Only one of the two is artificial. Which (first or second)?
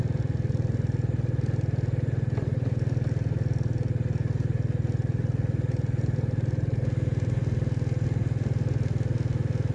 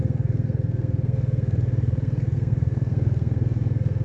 second